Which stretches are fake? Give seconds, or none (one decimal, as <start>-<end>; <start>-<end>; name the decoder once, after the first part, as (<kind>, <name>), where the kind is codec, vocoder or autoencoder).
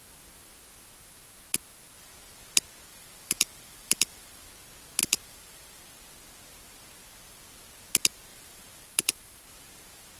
2.9-4.5 (vocoder, BigVGAN v2); 5.0-5.8; 8.3-9.4